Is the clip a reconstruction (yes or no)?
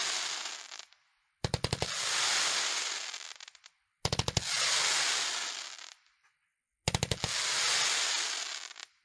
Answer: no